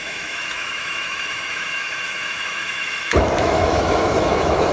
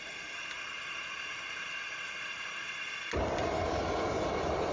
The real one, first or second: second